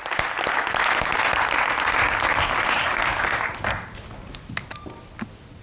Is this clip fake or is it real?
real